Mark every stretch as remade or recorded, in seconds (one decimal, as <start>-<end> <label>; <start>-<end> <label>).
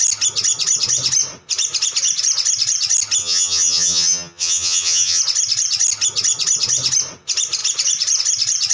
0.0-3.2 recorded; 3.2-5.2 remade; 5.2-8.7 recorded